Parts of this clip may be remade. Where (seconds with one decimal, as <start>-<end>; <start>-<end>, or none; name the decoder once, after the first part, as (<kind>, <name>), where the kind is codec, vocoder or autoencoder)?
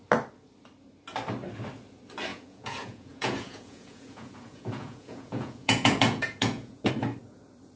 2.3-6.9 (vocoder, Vocos)